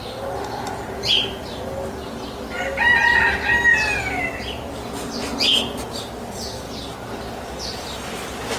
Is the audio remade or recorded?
recorded